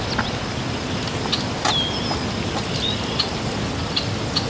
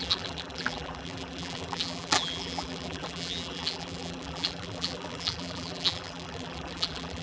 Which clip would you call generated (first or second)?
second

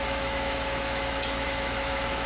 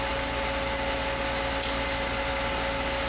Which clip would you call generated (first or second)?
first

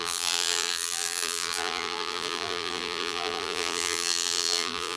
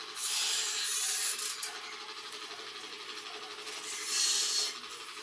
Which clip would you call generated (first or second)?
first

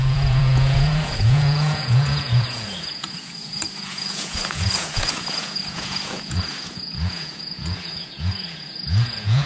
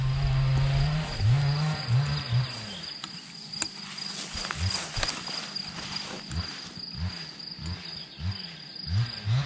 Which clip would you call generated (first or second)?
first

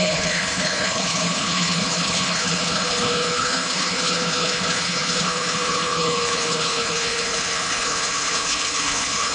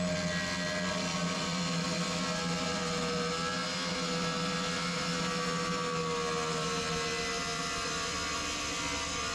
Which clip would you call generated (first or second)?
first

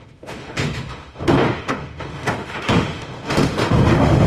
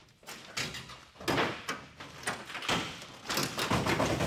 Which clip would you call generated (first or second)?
first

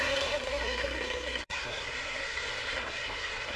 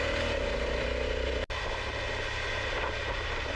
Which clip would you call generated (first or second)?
first